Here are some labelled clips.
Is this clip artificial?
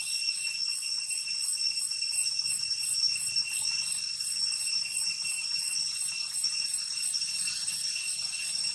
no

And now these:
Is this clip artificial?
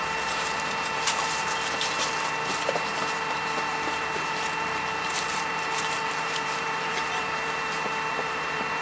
yes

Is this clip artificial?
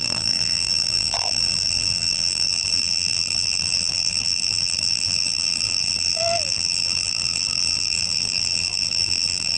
yes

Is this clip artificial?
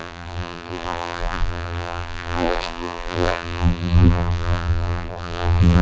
yes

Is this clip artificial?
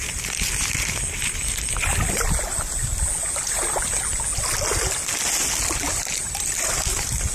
no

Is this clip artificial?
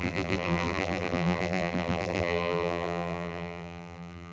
yes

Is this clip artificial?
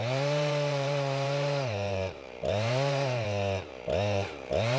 yes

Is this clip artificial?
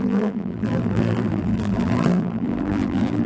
yes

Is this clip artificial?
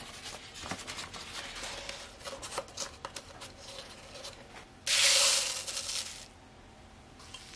no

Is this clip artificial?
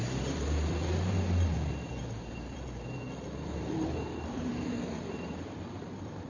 yes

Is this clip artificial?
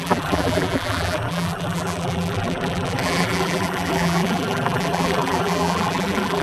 yes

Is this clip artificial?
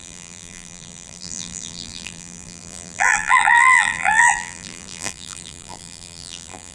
yes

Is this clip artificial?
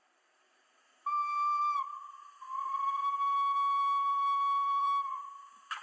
yes